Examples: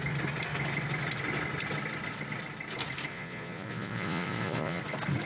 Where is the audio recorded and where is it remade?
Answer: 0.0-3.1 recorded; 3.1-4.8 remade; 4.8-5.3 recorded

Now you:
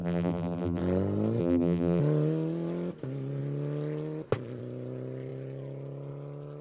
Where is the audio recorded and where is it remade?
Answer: 0.0-0.8 remade; 0.8-1.4 recorded; 1.4-2.0 remade; 2.0-6.6 recorded

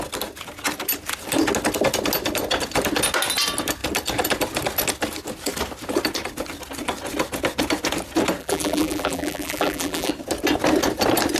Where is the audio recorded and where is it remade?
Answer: 0.0-8.4 recorded; 8.4-10.1 remade; 10.1-11.4 recorded

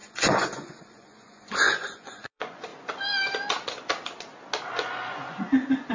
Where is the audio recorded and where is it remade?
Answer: 0.0-2.7 remade; 2.7-4.7 recorded; 4.7-5.9 remade